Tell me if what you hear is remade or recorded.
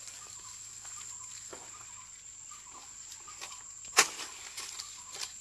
recorded